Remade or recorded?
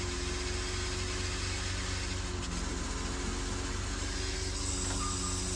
recorded